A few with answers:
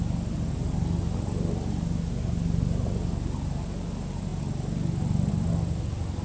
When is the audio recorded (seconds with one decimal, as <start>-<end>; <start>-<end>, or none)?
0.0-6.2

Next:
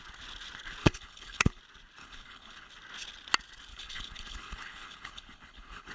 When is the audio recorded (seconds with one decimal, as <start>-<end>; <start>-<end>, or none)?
0.0-0.8; 1.6-2.0; 2.7-3.7

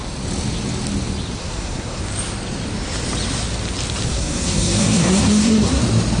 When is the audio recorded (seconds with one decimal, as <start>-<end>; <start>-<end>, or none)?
0.0-1.4; 2.0-4.1; 5.8-6.2

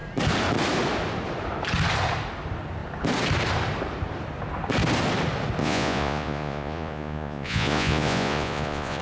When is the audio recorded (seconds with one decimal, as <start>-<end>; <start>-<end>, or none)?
0.0-5.6

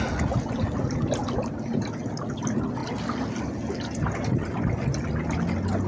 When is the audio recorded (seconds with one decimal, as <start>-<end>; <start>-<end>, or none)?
0.0-5.9

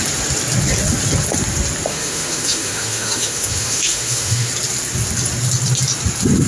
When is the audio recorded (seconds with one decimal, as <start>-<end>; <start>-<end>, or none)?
0.0-1.9; 4.5-6.5

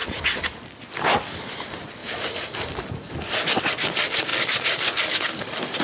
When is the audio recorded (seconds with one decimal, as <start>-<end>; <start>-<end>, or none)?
0.0-2.0; 3.7-4.3